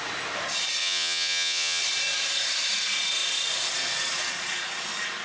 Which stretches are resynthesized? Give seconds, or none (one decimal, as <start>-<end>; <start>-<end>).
0.8-1.8